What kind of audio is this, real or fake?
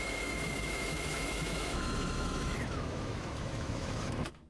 fake